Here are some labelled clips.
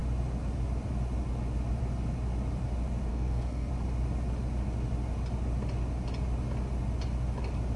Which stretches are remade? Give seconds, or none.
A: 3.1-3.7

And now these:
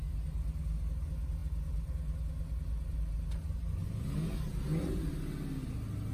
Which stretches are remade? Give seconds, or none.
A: none

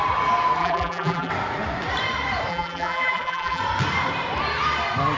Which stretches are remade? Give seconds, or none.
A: 0.6-1.3; 2.5-3.6

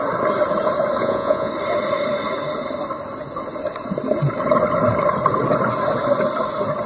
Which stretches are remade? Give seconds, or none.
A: 1.0-1.5

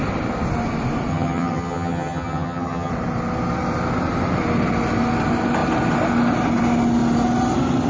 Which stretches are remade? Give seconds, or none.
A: 1.1-2.9

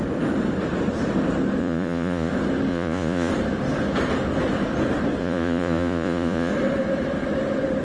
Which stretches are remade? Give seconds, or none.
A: 1.6-2.3; 2.7-3.3; 5.2-6.5

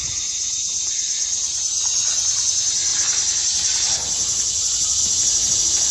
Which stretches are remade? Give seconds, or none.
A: none

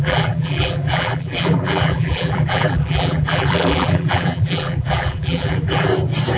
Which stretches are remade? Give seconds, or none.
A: 0.0-5.9